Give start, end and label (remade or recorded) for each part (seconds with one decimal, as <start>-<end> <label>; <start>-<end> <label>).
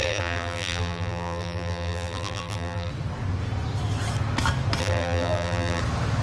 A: 0.0-2.9 remade; 2.9-4.8 recorded; 4.8-5.8 remade; 5.8-6.2 recorded